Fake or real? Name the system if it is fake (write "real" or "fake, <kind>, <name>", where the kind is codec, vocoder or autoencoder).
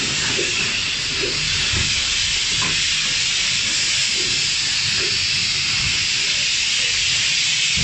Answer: real